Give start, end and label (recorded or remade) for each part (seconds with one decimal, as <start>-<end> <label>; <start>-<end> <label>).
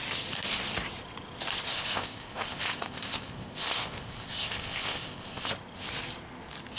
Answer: 0.0-1.7 recorded; 1.7-5.5 remade; 5.5-6.8 recorded